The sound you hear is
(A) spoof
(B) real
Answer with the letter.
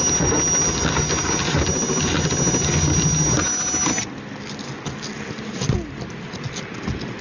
B